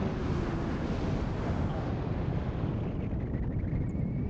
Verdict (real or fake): real